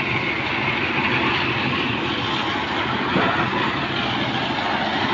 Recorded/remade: recorded